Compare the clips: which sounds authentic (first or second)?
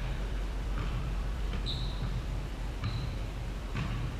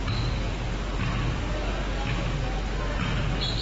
second